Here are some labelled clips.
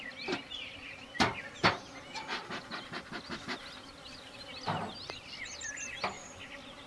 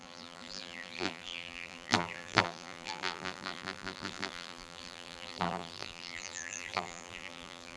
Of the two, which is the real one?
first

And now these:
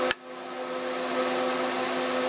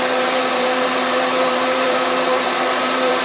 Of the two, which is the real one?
first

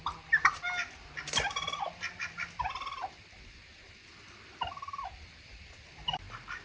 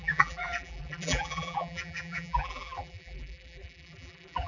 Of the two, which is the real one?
first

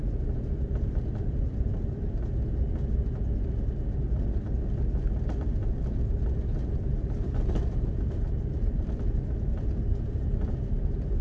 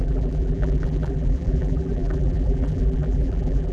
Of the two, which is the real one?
first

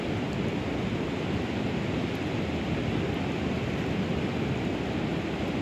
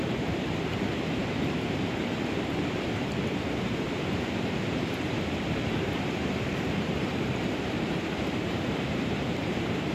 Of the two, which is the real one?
first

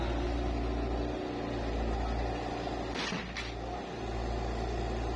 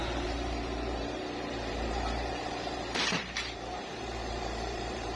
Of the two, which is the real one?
first